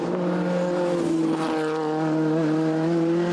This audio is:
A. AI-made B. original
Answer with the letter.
B